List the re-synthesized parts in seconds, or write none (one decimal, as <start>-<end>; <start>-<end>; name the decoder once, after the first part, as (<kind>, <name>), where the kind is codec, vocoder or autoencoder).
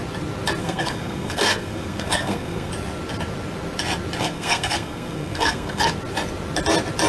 0.6-2.7 (codec, SNAC); 4.2-5.9